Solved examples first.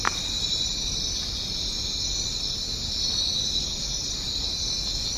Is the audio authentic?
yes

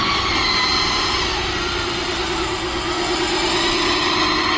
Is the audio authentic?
yes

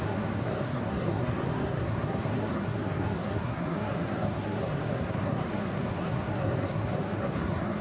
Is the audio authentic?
no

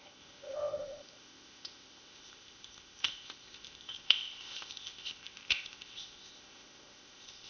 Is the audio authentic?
no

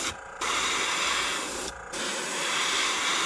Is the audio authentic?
yes